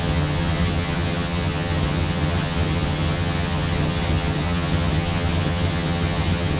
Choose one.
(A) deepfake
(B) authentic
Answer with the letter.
A